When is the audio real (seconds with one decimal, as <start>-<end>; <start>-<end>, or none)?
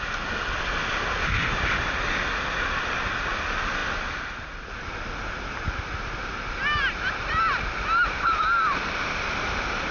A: 0.0-9.9